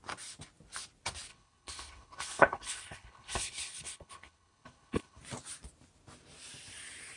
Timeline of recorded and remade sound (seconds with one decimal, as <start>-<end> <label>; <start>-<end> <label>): 0.0-1.3 recorded; 1.3-5.2 remade; 5.2-7.2 recorded